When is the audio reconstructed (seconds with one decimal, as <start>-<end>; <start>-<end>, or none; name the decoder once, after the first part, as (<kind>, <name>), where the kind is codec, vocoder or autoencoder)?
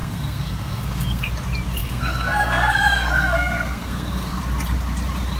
0.0-1.3 (codec, SNAC); 1.8-4.4